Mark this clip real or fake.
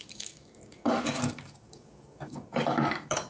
fake